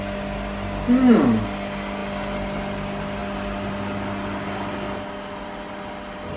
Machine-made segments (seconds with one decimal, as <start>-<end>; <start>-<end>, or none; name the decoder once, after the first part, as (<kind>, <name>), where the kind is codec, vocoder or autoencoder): none